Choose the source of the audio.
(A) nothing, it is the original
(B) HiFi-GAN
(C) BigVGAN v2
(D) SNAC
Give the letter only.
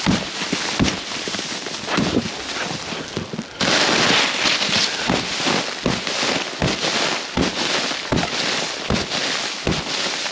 A